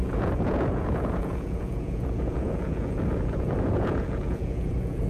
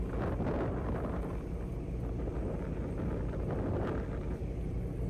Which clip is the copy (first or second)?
first